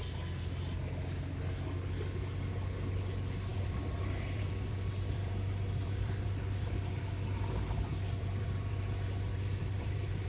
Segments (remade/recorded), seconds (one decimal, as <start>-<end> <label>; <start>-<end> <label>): 0.0-3.5 recorded; 3.5-7.0 remade; 7.0-7.9 recorded; 7.9-10.3 remade